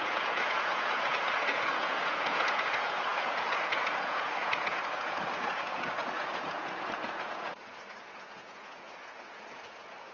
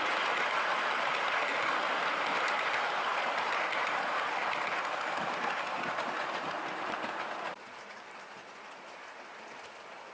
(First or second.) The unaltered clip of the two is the second